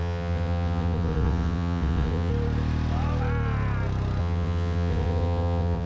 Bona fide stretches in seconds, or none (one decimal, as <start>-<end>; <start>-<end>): 2.3-4.2